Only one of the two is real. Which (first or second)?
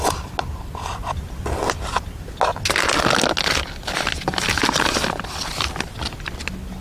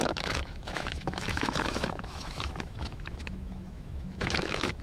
first